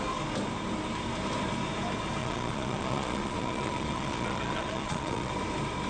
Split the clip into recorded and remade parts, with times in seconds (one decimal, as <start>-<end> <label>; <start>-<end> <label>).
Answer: 0.0-2.2 recorded; 2.2-5.3 remade; 5.3-5.9 recorded